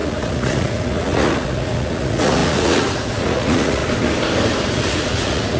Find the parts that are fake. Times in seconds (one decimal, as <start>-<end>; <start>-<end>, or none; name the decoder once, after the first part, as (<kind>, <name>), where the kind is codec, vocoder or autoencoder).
0.0-3.8 (vocoder, Vocos); 4.6-5.6